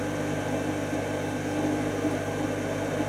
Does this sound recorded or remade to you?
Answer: recorded